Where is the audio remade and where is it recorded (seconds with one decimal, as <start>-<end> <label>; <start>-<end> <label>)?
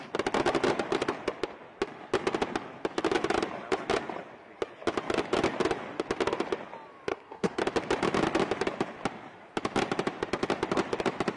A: 0.0-7.1 recorded; 7.1-7.6 remade; 7.6-11.4 recorded